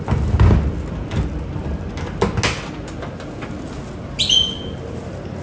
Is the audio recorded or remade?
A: recorded